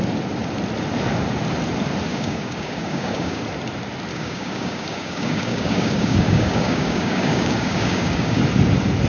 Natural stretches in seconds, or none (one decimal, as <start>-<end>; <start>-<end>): 0.0-2.1; 3.4-4.1; 8.4-9.1